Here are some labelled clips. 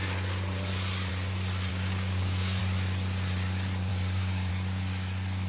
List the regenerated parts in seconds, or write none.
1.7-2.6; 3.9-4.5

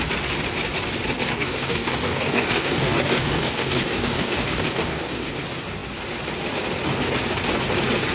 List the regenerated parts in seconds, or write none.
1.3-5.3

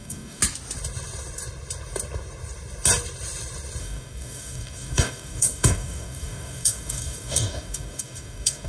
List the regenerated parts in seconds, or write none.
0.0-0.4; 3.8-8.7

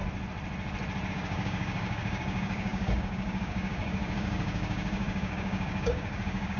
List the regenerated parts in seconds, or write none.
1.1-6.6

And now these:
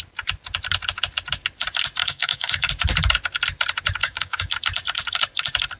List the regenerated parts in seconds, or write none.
2.0-2.7; 4.0-4.5

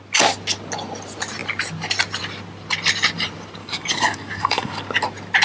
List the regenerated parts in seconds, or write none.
3.6-4.8

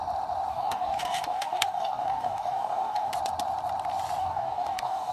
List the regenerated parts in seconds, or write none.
0.5-3.1; 4.2-5.1